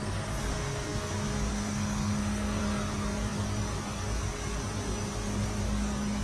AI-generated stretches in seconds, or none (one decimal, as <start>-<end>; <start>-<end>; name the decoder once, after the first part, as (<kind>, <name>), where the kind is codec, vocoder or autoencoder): 0.0-1.1 (codec, SNAC); 1.5-2.6